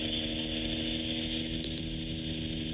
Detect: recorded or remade recorded